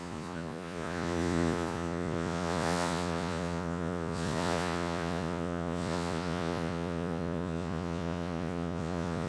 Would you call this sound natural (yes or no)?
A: no